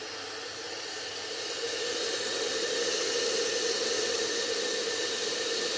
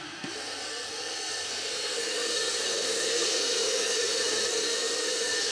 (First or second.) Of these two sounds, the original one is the first